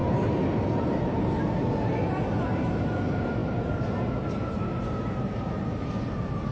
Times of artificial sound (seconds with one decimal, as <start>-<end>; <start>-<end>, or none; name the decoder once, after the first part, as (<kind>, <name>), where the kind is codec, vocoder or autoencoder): none